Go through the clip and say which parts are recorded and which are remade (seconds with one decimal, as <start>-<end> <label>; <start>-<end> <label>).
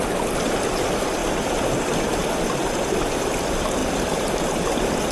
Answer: 0.0-5.1 recorded